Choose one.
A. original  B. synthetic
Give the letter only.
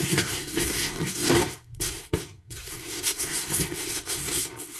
B